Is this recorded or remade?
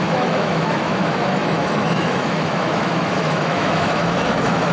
remade